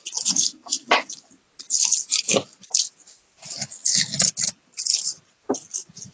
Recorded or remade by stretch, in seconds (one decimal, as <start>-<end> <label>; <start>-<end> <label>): 0.0-6.1 recorded

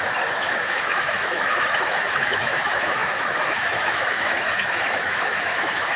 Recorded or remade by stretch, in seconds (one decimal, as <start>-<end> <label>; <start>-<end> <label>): 0.0-6.0 remade

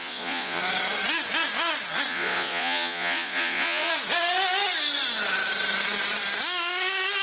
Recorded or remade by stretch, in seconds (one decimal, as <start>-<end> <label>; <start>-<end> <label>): 0.0-0.6 remade; 0.6-2.1 recorded; 2.1-3.9 remade; 3.9-7.2 recorded

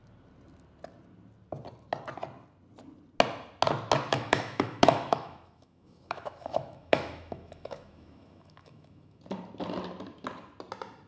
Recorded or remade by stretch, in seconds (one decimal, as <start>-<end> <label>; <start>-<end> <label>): 0.0-4.1 recorded; 4.1-9.2 remade; 9.2-11.1 recorded

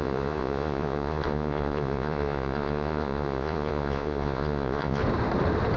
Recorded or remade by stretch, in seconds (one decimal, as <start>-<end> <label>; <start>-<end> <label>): 0.0-5.0 remade; 5.0-5.8 recorded